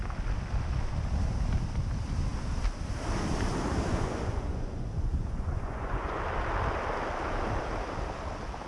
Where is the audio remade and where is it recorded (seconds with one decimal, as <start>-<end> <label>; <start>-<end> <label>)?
0.0-3.9 recorded; 3.9-6.2 remade; 6.2-8.7 recorded